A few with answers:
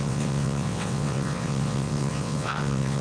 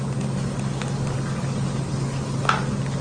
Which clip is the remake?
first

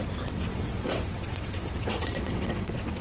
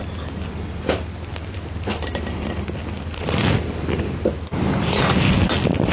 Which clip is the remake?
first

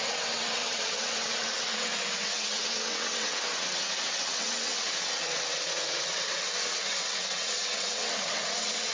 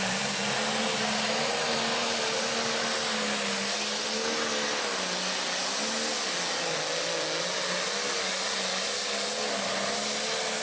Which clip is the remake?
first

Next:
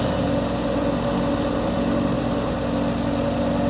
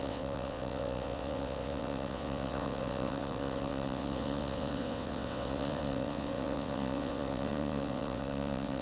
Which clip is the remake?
second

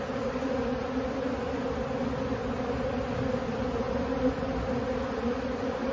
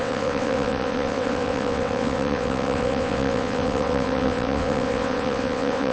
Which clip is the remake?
second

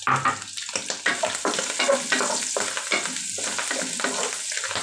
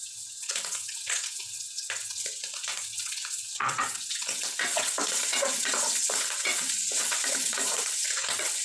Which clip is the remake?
second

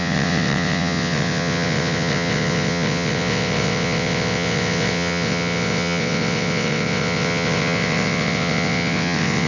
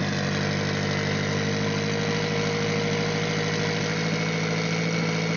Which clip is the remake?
first